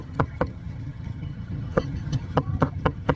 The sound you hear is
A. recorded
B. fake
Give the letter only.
B